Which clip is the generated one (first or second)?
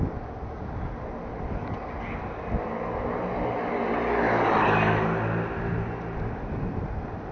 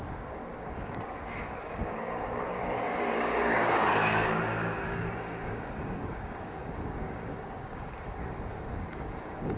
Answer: second